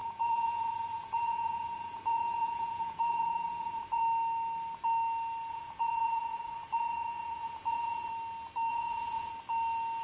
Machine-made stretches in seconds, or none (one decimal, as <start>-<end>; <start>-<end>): 0.0-4.0; 5.5-8.1; 8.7-9.3